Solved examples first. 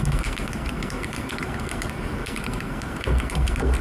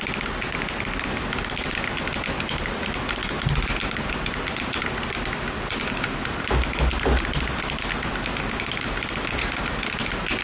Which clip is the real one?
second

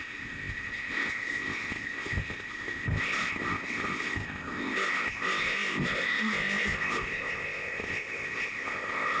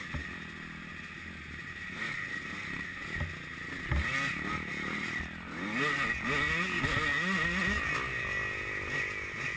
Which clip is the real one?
second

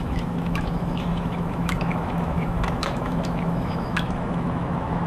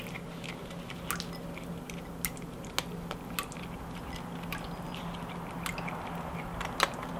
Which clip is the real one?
second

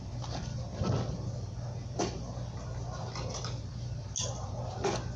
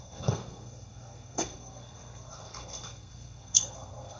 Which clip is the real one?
first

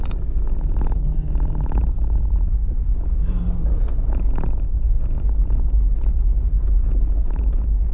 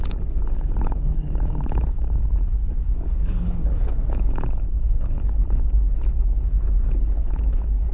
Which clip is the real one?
first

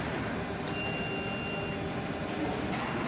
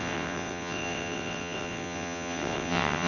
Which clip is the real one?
first